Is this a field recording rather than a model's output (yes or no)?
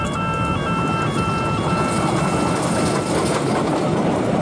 yes